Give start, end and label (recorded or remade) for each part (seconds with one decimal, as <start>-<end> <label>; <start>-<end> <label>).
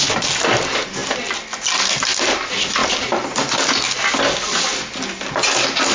0.0-5.9 recorded